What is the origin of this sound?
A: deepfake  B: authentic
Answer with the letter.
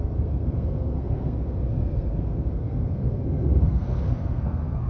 A